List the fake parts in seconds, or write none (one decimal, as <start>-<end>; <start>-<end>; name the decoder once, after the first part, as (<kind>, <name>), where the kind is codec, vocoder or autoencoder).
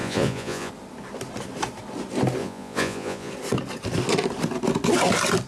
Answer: 0.0-0.7 (vocoder, Vocos); 2.4-3.3